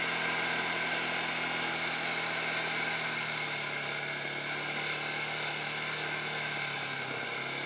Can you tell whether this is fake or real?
real